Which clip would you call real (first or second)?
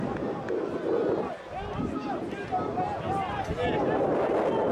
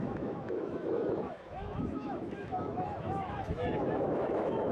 first